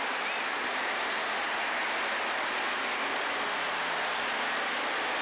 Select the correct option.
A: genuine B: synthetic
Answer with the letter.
A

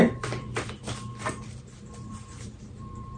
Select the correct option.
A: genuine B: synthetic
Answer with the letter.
B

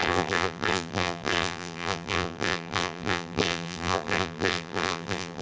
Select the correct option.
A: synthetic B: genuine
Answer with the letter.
A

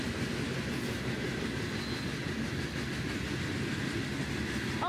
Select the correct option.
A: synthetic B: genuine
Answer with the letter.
B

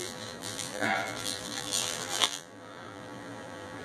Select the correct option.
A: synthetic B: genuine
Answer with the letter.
A